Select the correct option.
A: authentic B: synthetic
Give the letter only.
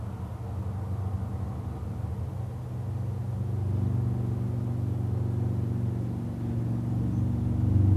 A